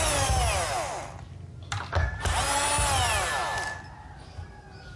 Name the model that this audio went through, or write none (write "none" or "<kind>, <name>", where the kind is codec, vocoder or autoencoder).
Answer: none